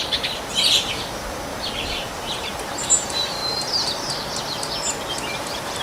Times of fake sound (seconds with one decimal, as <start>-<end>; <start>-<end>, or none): 1.5-4.1